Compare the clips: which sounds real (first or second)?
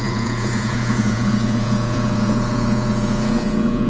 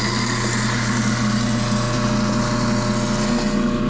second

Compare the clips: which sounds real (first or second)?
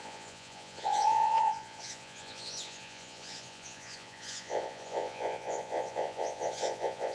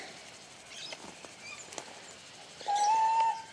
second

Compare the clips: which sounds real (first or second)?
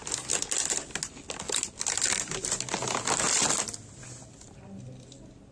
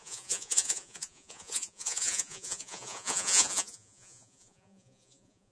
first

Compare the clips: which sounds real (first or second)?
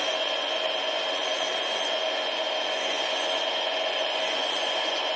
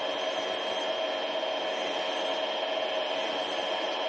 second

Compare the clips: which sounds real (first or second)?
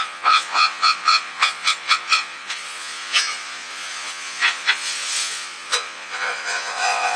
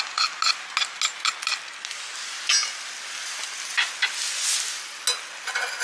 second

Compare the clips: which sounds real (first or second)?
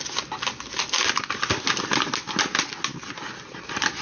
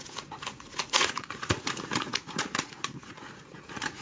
first